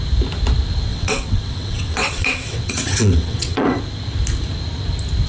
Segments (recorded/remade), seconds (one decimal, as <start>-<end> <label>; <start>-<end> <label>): 0.0-0.9 recorded; 0.9-3.8 remade; 3.8-5.3 recorded